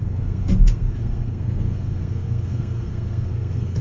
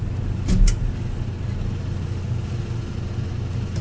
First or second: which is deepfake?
first